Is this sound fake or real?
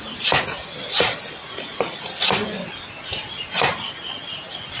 real